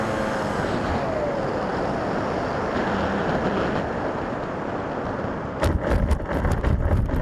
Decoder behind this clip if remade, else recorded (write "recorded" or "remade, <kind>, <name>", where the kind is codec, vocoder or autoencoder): recorded